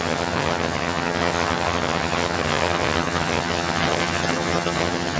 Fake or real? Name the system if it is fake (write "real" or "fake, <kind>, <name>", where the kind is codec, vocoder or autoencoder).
fake, vocoder, HiFi-GAN